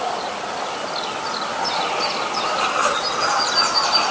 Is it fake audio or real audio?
real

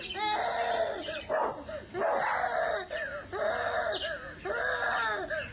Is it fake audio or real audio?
real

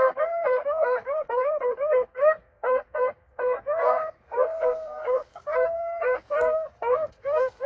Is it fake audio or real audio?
fake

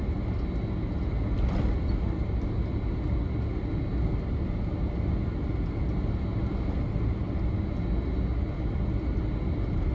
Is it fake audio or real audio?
real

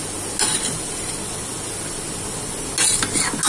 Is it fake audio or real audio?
real